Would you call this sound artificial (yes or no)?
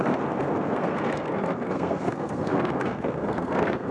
yes